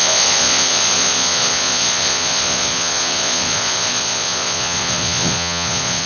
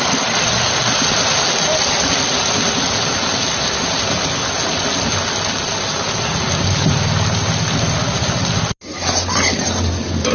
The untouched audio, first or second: second